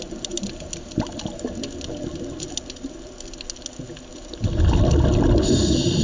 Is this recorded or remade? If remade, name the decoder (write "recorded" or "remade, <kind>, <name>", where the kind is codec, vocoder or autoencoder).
recorded